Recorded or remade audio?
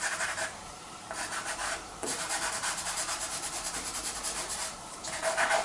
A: remade